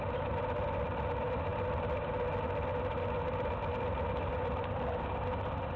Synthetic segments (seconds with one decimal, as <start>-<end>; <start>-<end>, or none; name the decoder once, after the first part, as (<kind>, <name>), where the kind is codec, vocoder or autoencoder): none